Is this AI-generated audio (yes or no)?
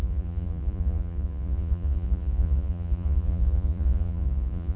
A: yes